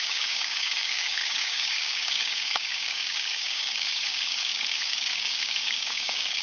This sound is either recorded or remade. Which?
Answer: remade